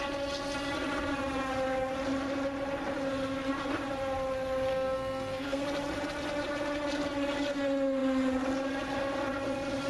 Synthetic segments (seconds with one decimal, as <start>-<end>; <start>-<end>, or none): 4.7-5.6